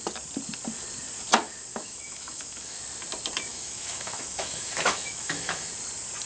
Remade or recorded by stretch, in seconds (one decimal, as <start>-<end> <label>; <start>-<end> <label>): 0.0-1.7 recorded; 1.7-2.8 remade; 2.8-3.5 recorded; 3.5-5.7 remade; 5.7-6.3 recorded

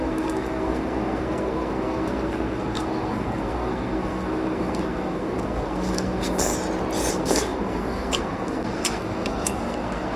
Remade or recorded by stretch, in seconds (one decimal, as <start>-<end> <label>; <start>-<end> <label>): 0.0-6.5 remade; 6.5-7.1 recorded; 7.1-10.2 remade

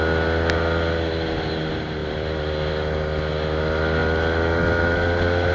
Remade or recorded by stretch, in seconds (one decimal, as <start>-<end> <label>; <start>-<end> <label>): 0.0-2.0 recorded; 2.0-2.7 remade; 2.7-4.0 recorded; 4.0-5.5 remade

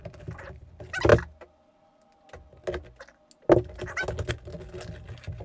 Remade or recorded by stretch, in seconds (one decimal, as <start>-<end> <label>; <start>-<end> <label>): 0.0-0.7 remade; 0.7-5.4 recorded

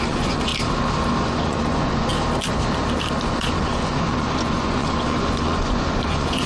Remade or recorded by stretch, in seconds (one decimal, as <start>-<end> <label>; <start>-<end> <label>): 0.0-0.5 remade; 0.5-1.2 recorded; 1.2-2.1 remade; 2.1-3.3 recorded; 3.3-6.5 remade

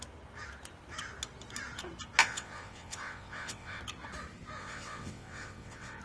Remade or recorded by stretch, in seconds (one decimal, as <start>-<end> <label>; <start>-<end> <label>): 0.0-2.2 recorded; 2.2-3.8 remade; 3.8-4.6 recorded; 4.6-6.0 remade

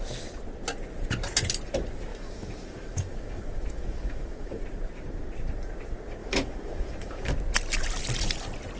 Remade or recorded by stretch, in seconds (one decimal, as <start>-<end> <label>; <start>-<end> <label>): 0.0-2.1 recorded; 2.1-4.6 remade; 4.6-6.2 recorded; 6.2-7.3 remade; 7.3-8.8 recorded

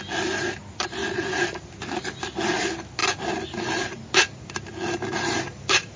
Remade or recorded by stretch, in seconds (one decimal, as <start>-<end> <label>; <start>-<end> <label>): 0.0-1.0 recorded; 1.0-1.7 remade; 1.7-5.1 recorded; 5.1-6.0 remade